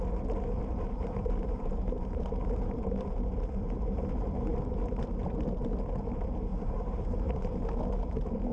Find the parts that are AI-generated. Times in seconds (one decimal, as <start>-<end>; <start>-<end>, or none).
0.6-4.0; 6.5-7.5